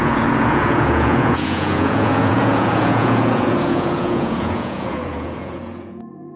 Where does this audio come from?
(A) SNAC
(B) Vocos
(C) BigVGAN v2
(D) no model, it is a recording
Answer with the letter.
B